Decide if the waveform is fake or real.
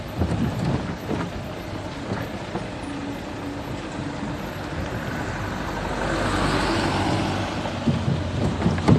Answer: real